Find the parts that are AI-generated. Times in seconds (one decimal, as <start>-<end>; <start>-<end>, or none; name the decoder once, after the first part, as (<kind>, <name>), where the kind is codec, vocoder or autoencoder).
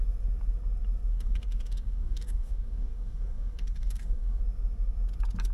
1.1-4.4 (codec, DAC)